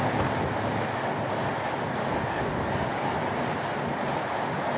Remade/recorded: recorded